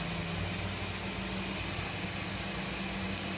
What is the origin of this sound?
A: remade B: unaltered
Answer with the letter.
B